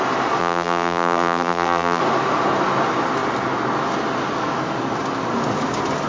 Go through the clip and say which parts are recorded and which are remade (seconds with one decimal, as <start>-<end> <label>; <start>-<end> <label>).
0.0-0.4 recorded; 0.4-2.0 remade; 2.0-6.1 recorded